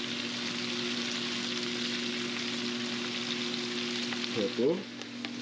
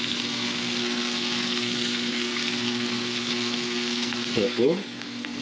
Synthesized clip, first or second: second